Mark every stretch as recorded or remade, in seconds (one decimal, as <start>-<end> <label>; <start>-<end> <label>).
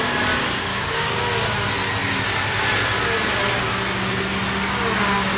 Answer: 0.0-0.7 recorded; 0.7-1.2 remade; 1.2-5.4 recorded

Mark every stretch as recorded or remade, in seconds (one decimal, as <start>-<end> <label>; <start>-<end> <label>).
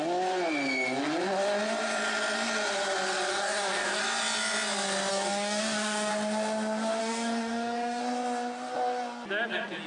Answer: 0.0-3.3 recorded; 3.3-4.0 remade; 4.0-5.1 recorded; 5.1-6.1 remade; 6.1-7.0 recorded; 7.0-8.0 remade; 8.0-9.9 recorded